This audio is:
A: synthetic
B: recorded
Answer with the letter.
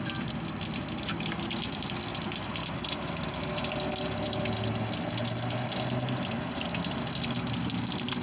B